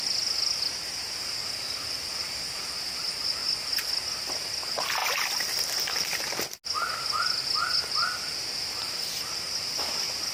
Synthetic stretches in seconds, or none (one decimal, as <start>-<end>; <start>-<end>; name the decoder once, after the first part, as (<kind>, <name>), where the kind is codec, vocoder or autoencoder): 2.2-2.8 (vocoder, BigVGAN v2)